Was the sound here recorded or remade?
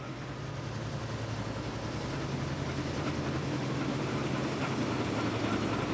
recorded